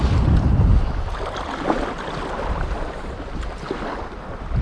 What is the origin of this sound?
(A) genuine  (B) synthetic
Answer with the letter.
A